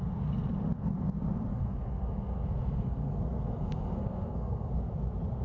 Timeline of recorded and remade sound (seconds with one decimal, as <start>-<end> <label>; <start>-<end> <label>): 0.0-1.5 recorded; 1.5-4.7 remade; 4.7-5.4 recorded